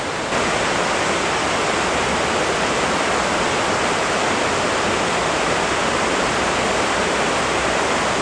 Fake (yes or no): no